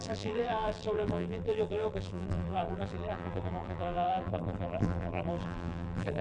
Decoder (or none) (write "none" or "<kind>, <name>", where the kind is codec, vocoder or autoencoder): vocoder, BigVGAN v2